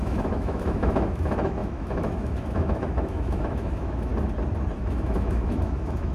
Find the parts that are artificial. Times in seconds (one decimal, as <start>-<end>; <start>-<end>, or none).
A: 0.0-4.1; 4.8-6.1